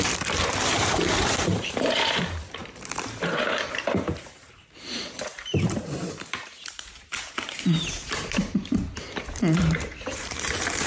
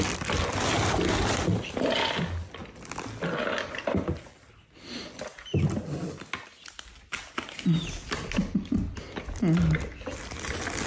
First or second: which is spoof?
first